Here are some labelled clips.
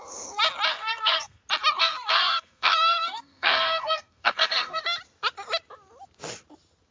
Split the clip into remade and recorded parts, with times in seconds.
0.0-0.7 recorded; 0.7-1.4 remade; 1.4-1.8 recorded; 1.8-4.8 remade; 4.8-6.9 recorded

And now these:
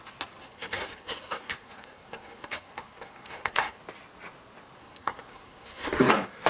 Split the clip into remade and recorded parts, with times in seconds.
0.0-0.4 recorded; 0.4-3.8 remade; 3.8-4.8 recorded; 4.8-6.1 remade; 6.1-6.5 recorded

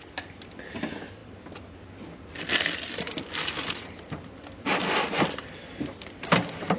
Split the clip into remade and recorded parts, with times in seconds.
0.0-6.8 recorded